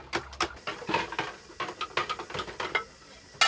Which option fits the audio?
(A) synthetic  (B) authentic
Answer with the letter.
B